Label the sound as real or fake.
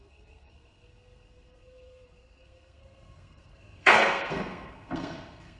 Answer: fake